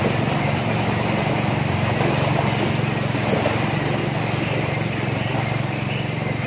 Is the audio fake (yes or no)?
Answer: yes